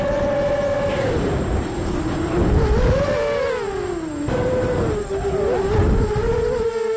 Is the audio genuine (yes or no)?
yes